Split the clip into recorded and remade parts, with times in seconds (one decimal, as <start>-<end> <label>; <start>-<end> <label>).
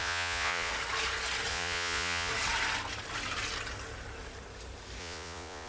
0.0-0.7 remade; 0.7-1.5 recorded; 1.5-2.3 remade; 2.3-5.0 recorded; 5.0-5.7 remade